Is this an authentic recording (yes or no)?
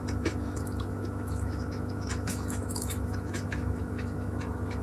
no